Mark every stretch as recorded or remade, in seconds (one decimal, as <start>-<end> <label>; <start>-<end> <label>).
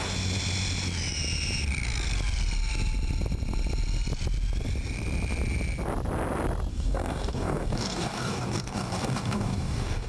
0.0-6.7 recorded; 6.7-10.1 remade